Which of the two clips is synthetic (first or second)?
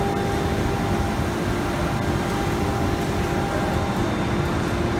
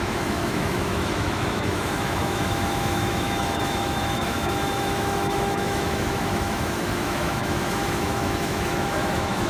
second